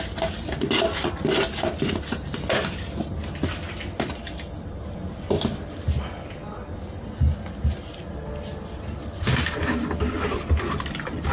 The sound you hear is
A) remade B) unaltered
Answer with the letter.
B